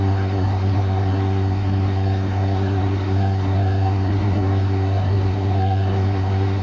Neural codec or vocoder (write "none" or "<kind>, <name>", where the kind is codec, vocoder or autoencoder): codec, SNAC